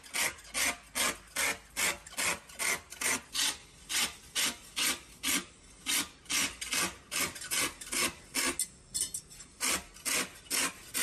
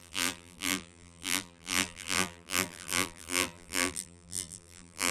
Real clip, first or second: first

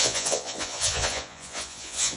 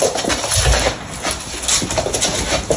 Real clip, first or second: second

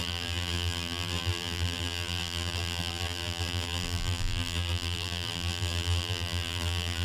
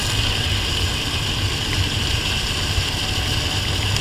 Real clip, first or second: second